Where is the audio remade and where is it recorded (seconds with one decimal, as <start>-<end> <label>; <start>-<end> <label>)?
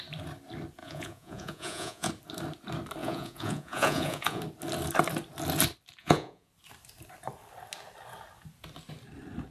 0.0-0.8 recorded; 0.8-2.1 remade; 2.1-3.0 recorded; 3.0-4.4 remade; 4.4-6.0 recorded; 6.0-6.5 remade; 6.5-9.5 recorded